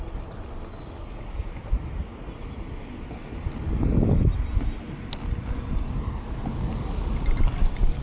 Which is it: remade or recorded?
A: recorded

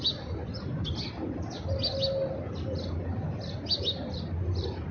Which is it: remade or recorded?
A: recorded